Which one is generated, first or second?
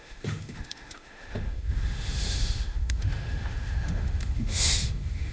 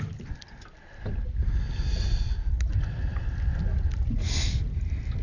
first